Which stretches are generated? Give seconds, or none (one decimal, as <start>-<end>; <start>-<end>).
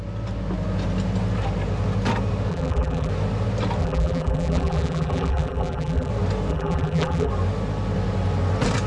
2.5-3.1; 3.8-6.1; 6.5-7.3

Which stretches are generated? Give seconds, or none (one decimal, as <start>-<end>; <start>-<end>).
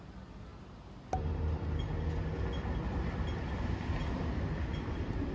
none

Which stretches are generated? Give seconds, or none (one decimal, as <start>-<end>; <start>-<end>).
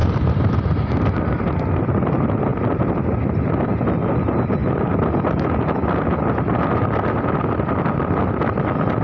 2.5-3.5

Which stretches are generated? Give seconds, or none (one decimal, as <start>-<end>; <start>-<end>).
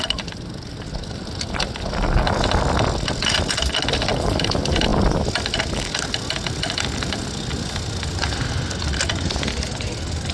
none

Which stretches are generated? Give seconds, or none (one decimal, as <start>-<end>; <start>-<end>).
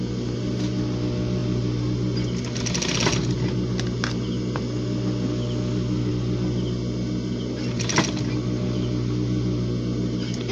none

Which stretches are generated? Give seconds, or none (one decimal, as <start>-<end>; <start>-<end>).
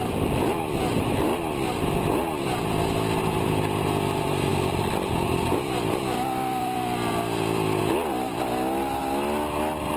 0.0-1.3; 1.8-9.0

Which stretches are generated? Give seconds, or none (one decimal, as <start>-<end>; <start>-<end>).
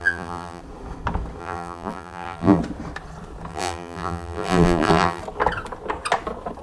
0.0-0.6; 1.4-2.6; 3.5-5.2